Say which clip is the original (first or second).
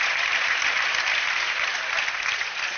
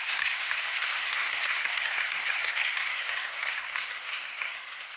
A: first